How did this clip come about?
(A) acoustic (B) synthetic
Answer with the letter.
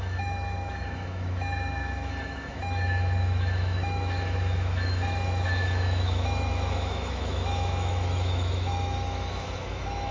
B